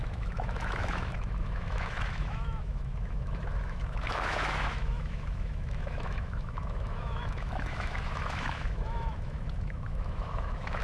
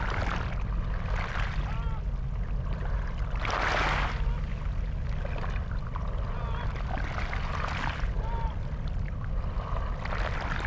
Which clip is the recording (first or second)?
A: second